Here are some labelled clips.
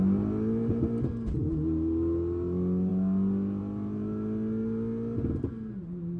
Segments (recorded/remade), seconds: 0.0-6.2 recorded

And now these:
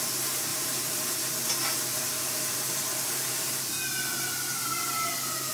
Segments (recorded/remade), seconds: 0.0-0.5 recorded; 0.5-1.1 remade; 1.1-1.9 recorded; 1.9-3.7 remade; 3.7-5.5 recorded

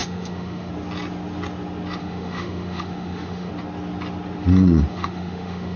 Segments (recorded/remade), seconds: 0.0-0.7 remade; 0.7-2.0 recorded; 2.0-3.5 remade; 3.5-4.9 recorded; 4.9-5.8 remade

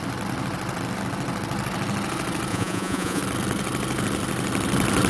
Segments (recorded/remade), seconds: 0.0-2.5 recorded; 2.5-3.2 remade; 3.2-5.1 recorded

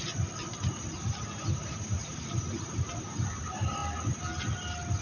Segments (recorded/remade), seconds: 0.0-5.0 recorded